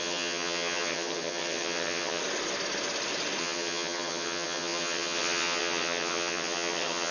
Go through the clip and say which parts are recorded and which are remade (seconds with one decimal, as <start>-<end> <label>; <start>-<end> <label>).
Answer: 0.0-2.2 remade; 2.2-3.4 recorded; 3.4-7.1 remade